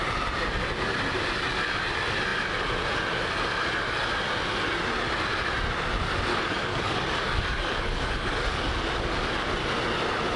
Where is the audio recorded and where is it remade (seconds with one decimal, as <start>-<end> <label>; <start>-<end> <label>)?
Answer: 0.0-6.3 recorded; 6.3-8.7 remade; 8.7-10.4 recorded